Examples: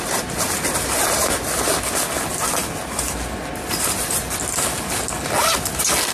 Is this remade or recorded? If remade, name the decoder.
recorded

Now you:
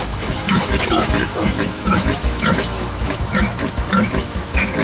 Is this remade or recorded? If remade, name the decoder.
remade, autoencoder, DAC-VAE